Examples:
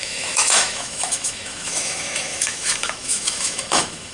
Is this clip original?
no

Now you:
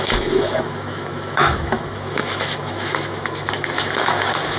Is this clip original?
no